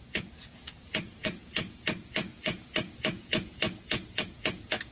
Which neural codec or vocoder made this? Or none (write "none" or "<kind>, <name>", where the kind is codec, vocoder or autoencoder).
vocoder, Vocos